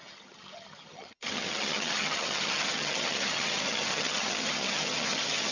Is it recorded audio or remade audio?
remade